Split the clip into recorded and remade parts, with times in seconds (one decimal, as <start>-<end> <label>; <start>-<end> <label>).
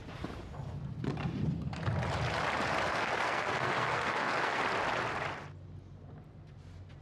0.0-2.9 recorded; 2.9-4.6 remade; 4.6-7.0 recorded